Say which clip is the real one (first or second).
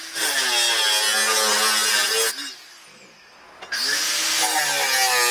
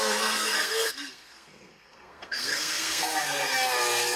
first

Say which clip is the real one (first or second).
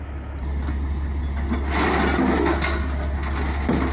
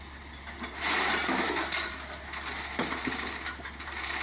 first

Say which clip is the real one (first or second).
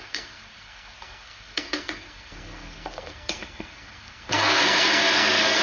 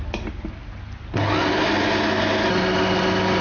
second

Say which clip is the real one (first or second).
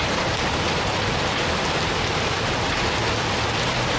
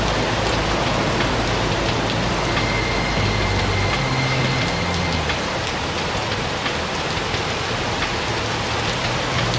second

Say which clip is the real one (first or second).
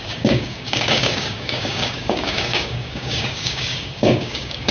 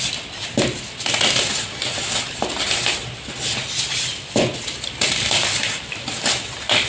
second